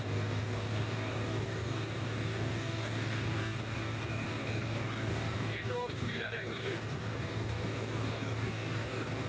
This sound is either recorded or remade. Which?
remade